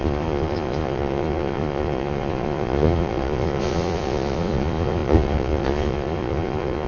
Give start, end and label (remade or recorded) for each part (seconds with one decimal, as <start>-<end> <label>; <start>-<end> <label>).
0.0-6.9 remade